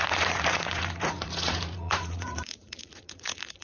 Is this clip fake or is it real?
fake